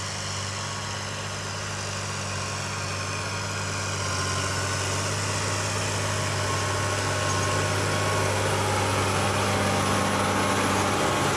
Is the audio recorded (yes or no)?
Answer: yes